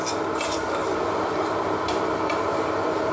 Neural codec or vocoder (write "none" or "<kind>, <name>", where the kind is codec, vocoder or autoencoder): vocoder, BigVGAN v2